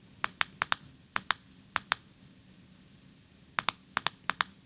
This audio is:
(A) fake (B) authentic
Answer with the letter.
B